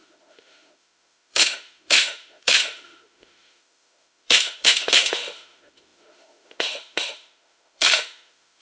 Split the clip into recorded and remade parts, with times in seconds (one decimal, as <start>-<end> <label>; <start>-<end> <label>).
0.0-8.6 remade